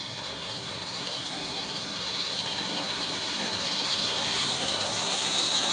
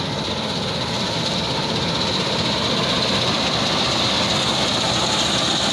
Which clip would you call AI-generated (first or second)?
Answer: first